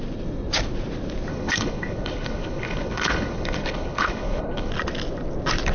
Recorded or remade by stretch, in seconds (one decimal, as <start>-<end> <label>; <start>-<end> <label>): 0.0-1.3 recorded; 1.3-4.7 remade; 4.7-5.7 recorded